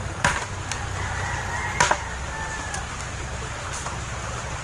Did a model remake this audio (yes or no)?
no